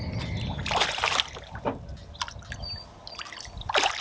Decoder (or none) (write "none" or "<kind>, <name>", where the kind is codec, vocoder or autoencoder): none